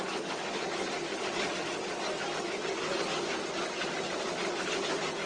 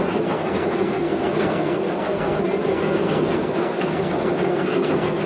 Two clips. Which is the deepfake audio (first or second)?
second